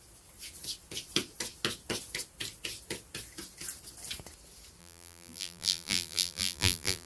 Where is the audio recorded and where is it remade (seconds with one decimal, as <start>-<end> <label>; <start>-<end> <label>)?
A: 0.0-4.8 recorded; 4.8-7.1 remade